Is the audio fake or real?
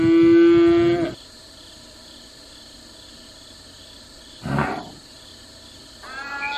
real